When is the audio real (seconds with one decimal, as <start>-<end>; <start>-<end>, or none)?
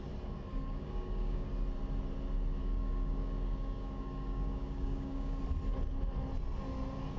0.0-0.5; 1.5-2.6; 5.4-7.2